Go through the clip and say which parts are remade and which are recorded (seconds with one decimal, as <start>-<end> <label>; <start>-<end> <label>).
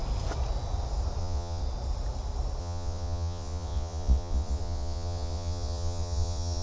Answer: 0.0-1.2 recorded; 1.2-1.6 remade; 1.6-2.6 recorded; 2.6-6.6 remade